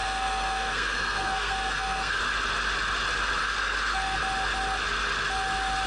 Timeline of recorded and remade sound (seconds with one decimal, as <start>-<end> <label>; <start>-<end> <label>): 0.0-2.2 remade; 2.2-3.4 recorded; 3.4-4.2 remade; 4.2-5.9 recorded